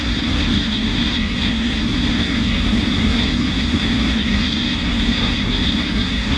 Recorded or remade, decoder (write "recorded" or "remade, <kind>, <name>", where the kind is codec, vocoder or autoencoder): remade, codec, SNAC